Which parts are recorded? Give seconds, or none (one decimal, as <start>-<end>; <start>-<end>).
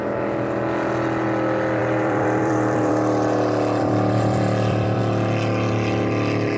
0.0-1.8; 5.0-6.6